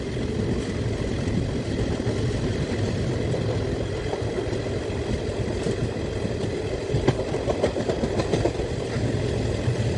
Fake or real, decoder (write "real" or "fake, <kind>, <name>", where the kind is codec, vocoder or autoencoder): real